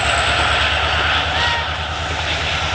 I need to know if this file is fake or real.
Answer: real